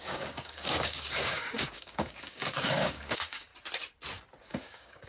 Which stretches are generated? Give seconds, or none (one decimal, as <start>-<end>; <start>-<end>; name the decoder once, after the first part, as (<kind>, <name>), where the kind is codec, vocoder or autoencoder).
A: 0.0-3.5 (codec, DAC); 4.4-5.1